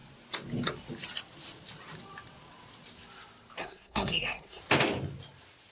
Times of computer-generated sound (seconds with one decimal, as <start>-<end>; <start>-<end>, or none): 3.6-4.6